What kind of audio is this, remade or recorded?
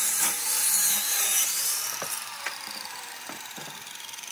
remade